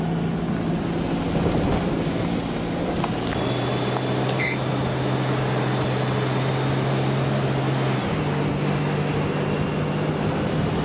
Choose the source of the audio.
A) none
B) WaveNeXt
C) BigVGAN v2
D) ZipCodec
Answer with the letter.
A